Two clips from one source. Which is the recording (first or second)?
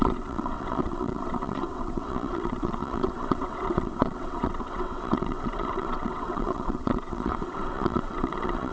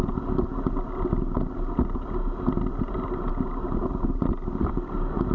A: second